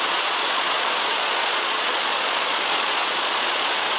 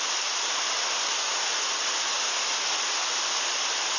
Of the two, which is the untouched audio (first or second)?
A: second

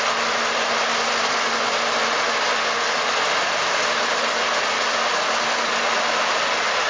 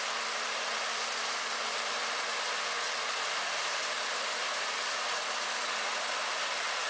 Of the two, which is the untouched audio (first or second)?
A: first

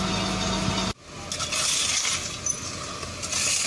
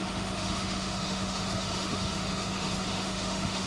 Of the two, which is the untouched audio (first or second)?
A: first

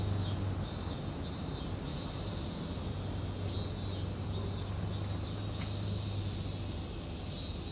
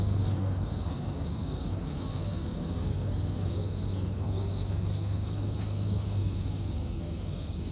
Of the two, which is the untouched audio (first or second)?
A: first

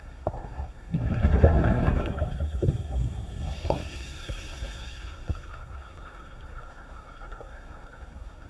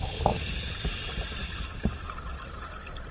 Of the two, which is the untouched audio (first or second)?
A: second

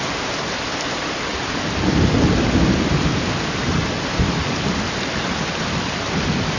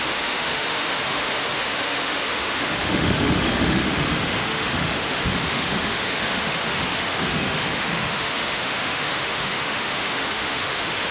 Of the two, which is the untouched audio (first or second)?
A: first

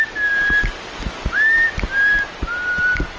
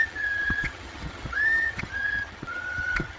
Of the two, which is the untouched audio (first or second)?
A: first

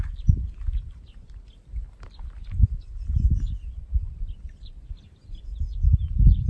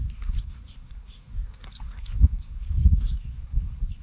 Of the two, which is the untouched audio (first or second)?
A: first